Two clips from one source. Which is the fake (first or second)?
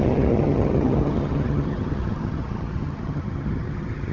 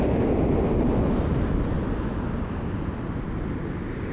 first